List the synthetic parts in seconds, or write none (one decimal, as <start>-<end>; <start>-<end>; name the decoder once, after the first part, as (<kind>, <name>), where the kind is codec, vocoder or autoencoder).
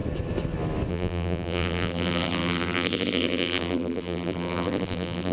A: 0.9-5.3 (vocoder, BigVGAN v2)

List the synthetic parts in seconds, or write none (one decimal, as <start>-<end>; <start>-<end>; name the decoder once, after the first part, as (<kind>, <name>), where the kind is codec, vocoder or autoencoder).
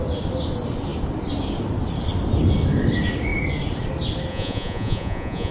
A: 4.3-5.5 (vocoder, Vocos)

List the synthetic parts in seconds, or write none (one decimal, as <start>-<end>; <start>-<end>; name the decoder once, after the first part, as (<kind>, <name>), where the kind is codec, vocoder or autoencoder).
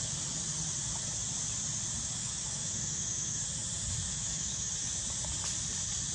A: 2.2-3.4 (autoencoder, DAC-VAE); 4.1-4.7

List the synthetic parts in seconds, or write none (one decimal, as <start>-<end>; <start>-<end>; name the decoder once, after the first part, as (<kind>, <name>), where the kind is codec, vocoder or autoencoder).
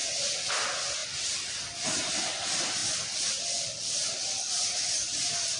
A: 0.0-0.5 (vocoder, BigVGAN v2); 2.8-4.5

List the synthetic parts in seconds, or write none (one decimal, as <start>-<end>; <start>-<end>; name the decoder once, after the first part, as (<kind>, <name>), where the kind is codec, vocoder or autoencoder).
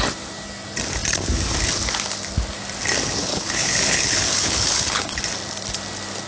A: 3.3-5.2 (codec, HILCodec)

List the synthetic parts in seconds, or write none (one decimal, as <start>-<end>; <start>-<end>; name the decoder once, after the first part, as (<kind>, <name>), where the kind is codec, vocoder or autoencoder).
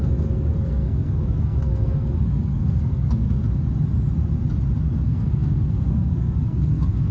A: 0.0-3.4 (codec, SNAC); 4.8-7.1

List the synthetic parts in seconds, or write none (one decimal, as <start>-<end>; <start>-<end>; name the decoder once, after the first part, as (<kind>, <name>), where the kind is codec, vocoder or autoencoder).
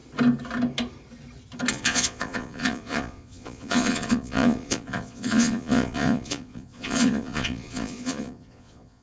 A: 1.7-9.0 (vocoder, Vocos)